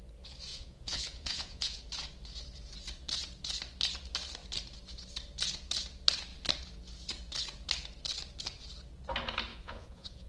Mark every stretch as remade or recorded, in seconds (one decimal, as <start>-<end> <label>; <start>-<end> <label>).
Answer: 0.0-0.5 recorded; 0.5-1.8 remade; 1.8-9.5 recorded; 9.5-10.3 remade